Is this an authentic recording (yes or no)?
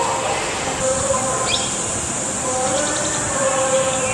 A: yes